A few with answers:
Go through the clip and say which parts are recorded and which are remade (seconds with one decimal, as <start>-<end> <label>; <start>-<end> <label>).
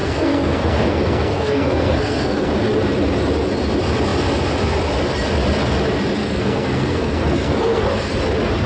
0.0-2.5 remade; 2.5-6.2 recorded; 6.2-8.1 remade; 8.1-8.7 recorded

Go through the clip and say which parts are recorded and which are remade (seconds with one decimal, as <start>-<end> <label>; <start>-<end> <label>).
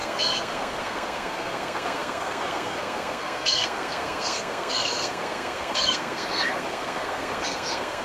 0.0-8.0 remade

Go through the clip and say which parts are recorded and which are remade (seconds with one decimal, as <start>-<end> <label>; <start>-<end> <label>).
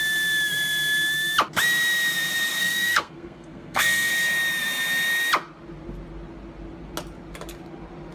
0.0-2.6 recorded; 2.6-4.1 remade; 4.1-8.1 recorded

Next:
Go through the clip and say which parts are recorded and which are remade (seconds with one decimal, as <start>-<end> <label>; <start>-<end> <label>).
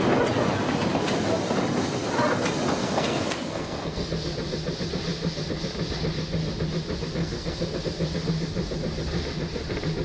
0.0-2.8 recorded; 2.8-4.1 remade; 4.1-7.2 recorded; 7.2-7.8 remade; 7.8-10.0 recorded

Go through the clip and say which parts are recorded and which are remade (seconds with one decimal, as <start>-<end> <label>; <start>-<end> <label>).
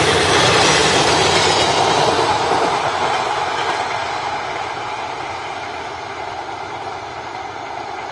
0.0-0.8 recorded; 0.8-1.6 remade; 1.6-8.1 recorded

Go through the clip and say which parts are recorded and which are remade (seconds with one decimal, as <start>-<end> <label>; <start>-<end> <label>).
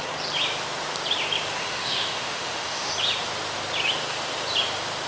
0.0-1.6 recorded; 1.6-2.9 remade; 2.9-5.1 recorded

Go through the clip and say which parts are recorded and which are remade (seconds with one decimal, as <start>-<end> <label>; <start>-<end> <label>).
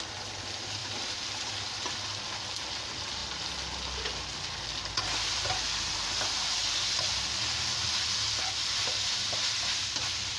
0.0-0.8 recorded; 0.8-1.5 remade; 1.5-10.4 recorded